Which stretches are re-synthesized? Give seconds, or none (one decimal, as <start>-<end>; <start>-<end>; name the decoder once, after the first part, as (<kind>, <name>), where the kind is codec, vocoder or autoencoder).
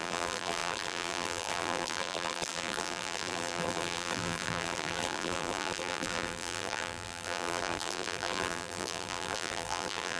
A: 0.0-10.2 (vocoder, BigVGAN v2)